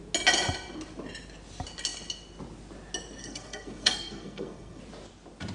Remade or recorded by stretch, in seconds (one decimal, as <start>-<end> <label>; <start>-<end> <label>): 0.0-3.2 recorded; 3.2-4.8 remade; 4.8-5.5 recorded